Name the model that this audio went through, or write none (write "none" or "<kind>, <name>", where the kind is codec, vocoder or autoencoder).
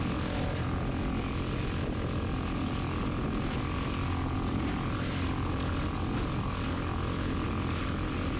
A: none